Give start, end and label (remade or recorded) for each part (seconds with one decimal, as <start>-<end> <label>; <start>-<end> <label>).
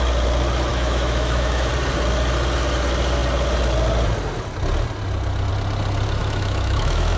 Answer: 0.0-0.7 recorded; 0.7-1.7 remade; 1.7-6.2 recorded; 6.2-7.2 remade